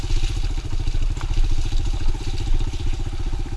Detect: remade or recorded remade